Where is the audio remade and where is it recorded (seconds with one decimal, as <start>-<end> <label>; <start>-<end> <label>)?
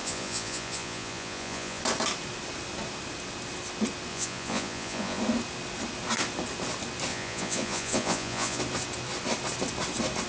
0.0-1.8 remade; 1.8-4.1 recorded; 4.1-5.2 remade; 5.2-7.1 recorded; 7.1-8.6 remade; 8.6-10.3 recorded